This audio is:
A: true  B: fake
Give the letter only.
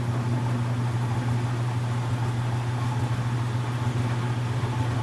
A